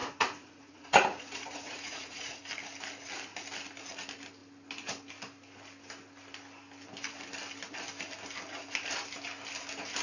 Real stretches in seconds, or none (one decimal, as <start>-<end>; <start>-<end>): 2.4-10.0